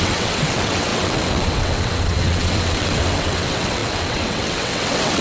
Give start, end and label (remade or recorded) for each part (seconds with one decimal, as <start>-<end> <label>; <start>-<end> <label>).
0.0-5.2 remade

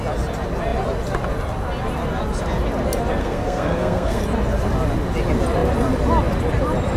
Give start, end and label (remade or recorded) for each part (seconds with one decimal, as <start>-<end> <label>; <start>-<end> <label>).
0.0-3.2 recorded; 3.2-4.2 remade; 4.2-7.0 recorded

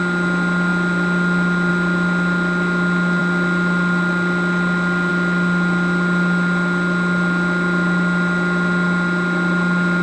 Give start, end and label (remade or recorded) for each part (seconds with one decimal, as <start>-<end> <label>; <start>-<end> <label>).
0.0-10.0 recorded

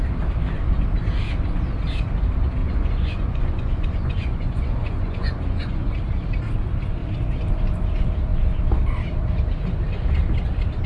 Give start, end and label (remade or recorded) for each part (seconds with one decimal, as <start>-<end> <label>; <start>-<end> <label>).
0.0-2.6 recorded; 2.6-5.9 remade; 5.9-10.9 recorded

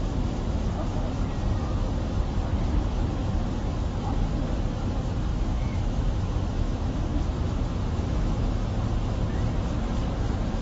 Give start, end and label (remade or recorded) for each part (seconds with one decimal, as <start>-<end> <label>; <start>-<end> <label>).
0.0-5.3 recorded; 5.3-7.0 remade; 7.0-7.8 recorded; 7.8-8.5 remade; 8.5-10.6 recorded